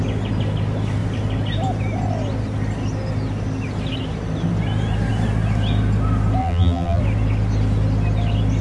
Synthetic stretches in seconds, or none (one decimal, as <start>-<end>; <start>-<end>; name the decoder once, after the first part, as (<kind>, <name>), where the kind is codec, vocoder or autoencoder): 6.4-7.0 (vocoder, BigVGAN v2)